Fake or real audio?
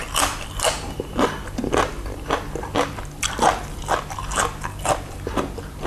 real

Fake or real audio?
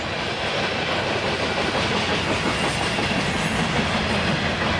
real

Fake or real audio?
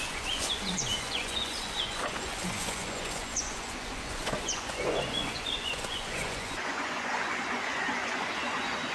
fake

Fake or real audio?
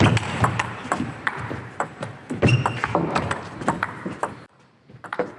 fake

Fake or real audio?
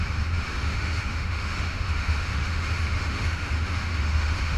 fake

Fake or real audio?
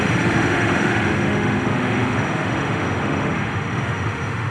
fake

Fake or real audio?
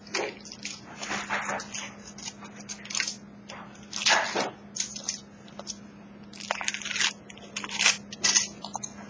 real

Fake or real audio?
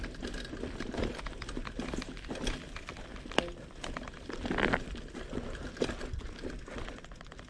real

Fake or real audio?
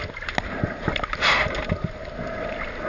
real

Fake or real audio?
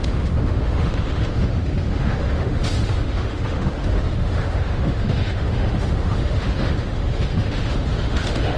fake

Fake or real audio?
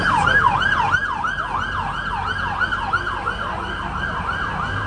real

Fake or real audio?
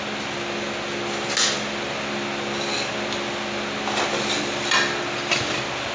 real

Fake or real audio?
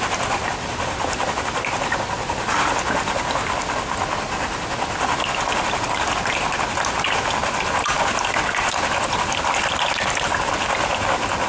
real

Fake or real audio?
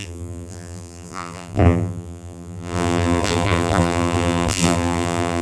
fake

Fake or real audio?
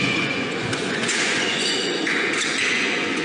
fake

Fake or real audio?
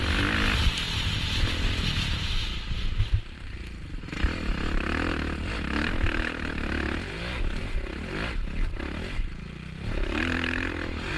real